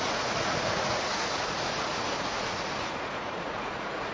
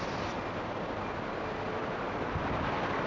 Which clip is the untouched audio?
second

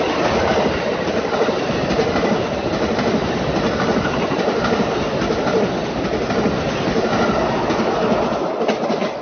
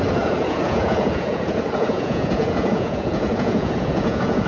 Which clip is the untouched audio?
first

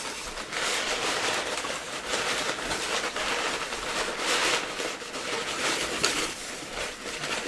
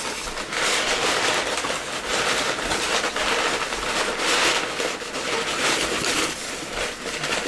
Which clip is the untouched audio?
second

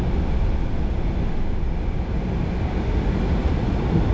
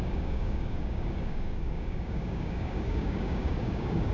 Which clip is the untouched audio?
first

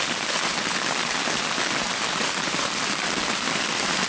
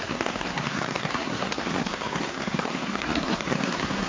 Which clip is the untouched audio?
first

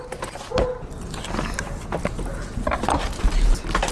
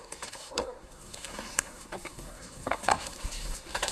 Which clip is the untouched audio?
first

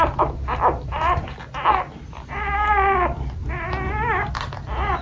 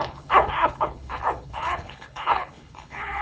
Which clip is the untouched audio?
first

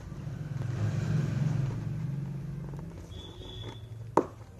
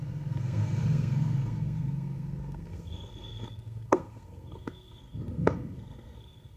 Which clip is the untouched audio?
first